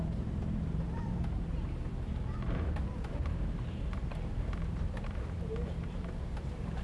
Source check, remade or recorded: remade